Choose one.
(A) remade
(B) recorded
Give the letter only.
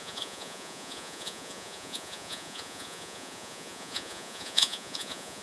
A